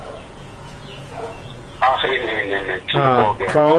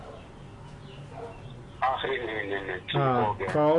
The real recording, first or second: second